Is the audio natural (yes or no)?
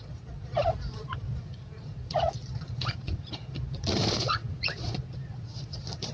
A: no